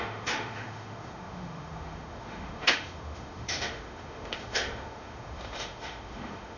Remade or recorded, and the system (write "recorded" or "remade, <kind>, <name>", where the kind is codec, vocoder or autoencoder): remade, autoencoder, DAC-VAE